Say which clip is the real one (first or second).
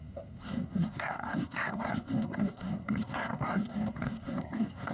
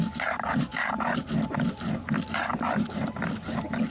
second